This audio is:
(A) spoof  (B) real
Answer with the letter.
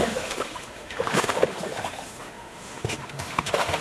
A